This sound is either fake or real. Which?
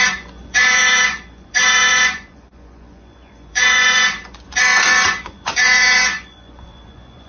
fake